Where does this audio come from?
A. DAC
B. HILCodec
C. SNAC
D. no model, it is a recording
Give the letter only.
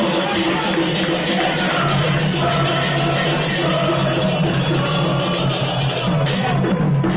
D